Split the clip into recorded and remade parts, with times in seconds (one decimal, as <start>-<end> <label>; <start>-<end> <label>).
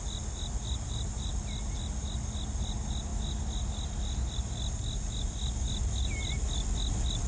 0.0-7.3 recorded